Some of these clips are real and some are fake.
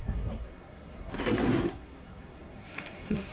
fake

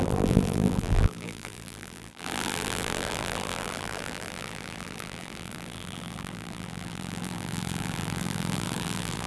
fake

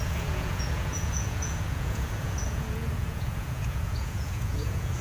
fake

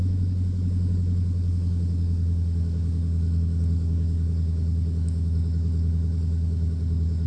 fake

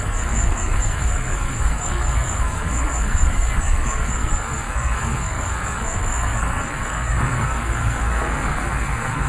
fake